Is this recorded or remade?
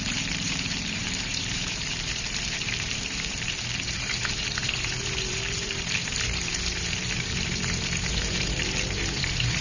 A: remade